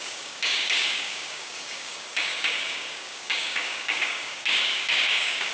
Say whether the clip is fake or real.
fake